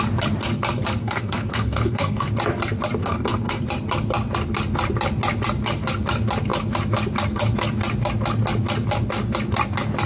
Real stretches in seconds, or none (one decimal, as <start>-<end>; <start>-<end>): 0.0-1.0; 2.3-3.0; 3.6-10.1